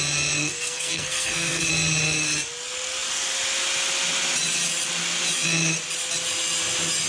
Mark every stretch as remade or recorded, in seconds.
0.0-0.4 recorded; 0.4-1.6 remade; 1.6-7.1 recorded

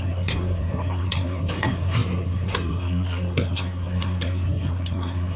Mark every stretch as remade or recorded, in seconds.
0.0-5.4 remade

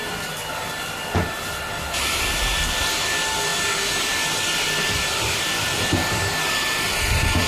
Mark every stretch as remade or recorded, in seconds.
0.0-7.5 recorded

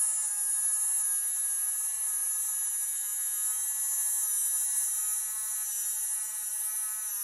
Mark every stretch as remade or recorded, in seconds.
0.0-7.2 recorded

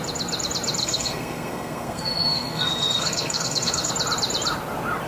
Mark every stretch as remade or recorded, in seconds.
0.0-0.8 recorded; 0.8-3.9 remade; 3.9-5.1 recorded

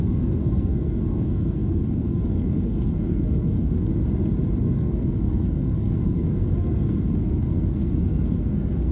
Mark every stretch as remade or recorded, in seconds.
0.0-3.9 remade; 3.9-4.6 recorded; 4.6-8.9 remade

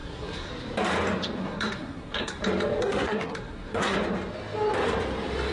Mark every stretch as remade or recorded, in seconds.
0.0-0.5 remade; 0.5-1.4 recorded; 1.4-2.4 remade; 2.4-2.8 recorded; 2.8-4.0 remade; 4.0-5.5 recorded